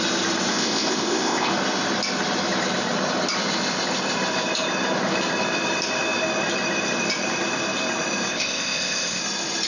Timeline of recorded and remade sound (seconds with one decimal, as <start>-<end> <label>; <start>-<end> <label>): 0.0-0.5 recorded; 0.5-1.5 remade; 1.5-8.3 recorded; 8.3-9.2 remade; 9.2-9.7 recorded